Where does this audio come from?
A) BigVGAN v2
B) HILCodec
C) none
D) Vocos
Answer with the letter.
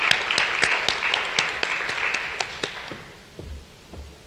C